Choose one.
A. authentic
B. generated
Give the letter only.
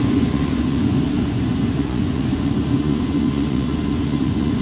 B